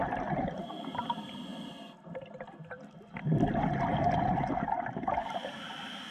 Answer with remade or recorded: recorded